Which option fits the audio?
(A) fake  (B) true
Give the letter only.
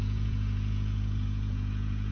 A